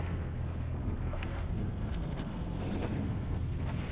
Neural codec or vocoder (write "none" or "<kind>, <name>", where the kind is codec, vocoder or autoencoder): codec, SNAC